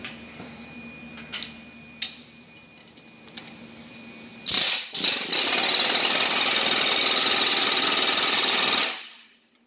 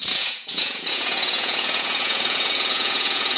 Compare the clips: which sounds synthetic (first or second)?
second